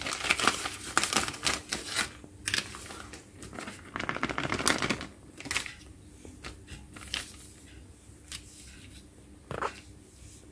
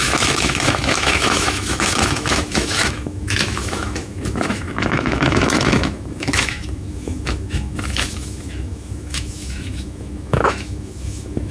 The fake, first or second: second